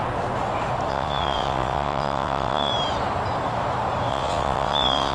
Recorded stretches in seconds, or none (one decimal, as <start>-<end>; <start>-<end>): 0.0-0.9; 2.7-4.1

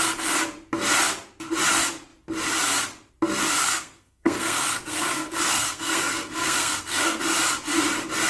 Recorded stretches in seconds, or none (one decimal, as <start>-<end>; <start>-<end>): 0.0-3.6; 7.2-8.3

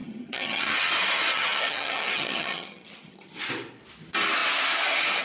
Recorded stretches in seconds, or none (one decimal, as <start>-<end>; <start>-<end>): 0.9-1.3; 3.4-5.2